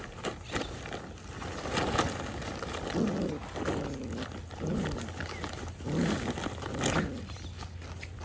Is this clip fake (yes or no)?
no